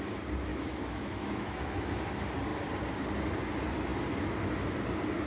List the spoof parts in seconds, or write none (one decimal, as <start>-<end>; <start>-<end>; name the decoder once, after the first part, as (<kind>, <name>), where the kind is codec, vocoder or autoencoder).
0.5-2.0 (autoencoder, DAC-VAE)